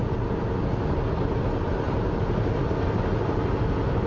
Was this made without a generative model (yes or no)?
yes